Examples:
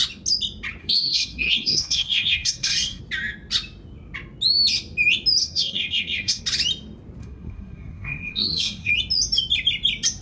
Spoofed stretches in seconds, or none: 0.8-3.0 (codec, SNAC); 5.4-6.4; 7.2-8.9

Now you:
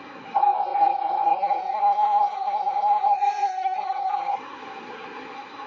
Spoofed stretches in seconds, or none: 0.0-5.7 (codec, SNAC)